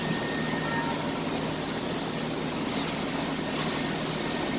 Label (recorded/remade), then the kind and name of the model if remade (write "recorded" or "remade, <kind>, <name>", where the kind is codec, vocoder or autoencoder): recorded